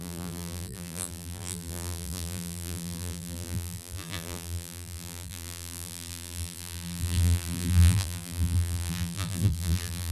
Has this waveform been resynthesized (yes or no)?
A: yes